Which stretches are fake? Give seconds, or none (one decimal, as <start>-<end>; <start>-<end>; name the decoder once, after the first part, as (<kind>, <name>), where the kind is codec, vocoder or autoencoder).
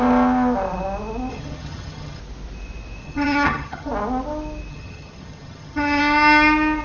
1.3-2.2 (vocoder, HiFi-GAN); 3.0-3.9; 4.7-6.0